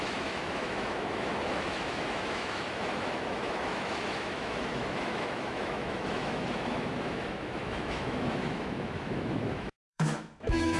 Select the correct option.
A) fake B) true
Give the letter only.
A